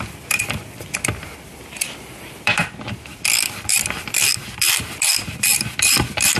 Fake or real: fake